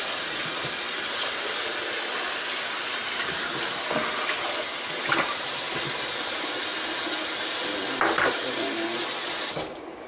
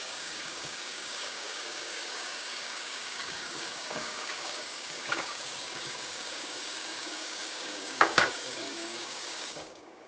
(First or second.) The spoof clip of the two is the second